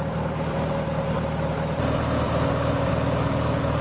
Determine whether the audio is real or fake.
real